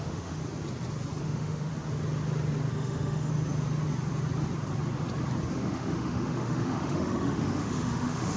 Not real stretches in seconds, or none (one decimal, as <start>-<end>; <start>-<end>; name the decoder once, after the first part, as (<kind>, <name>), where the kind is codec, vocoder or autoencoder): 0.0-0.4 (autoencoder, DAC-VAE); 1.2-1.7; 2.7-3.3; 5.5-8.4